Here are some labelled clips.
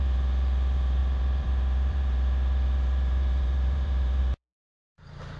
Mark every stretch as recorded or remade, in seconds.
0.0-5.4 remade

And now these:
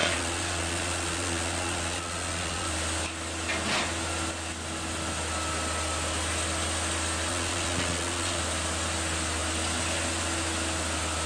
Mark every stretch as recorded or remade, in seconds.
0.0-2.7 remade; 2.7-7.3 recorded; 7.3-8.4 remade; 8.4-11.3 recorded